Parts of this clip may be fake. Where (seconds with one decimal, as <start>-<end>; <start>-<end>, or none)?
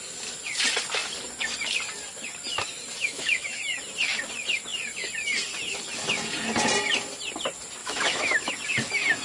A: 3.0-3.6; 7.8-8.5